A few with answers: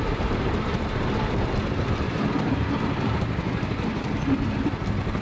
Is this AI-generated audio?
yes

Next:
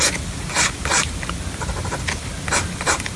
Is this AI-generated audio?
no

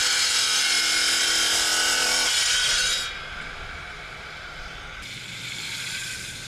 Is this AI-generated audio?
yes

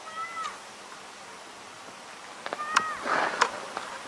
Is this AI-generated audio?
no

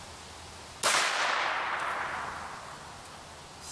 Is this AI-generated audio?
no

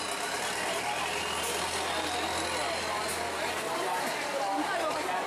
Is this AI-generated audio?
no